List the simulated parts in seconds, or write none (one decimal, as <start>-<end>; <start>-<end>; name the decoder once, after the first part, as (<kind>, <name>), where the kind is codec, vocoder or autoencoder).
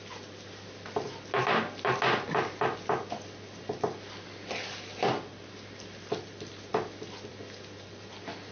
none